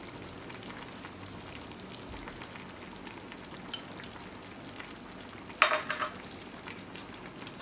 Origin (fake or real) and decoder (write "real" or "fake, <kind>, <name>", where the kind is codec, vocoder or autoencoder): real